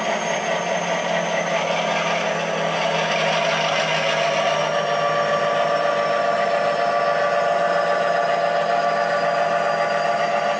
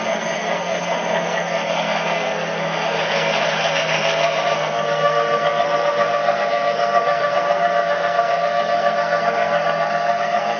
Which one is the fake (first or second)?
second